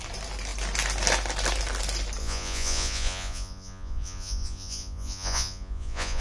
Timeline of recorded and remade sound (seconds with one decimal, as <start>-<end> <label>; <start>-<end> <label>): 0.0-2.2 recorded; 2.2-6.2 remade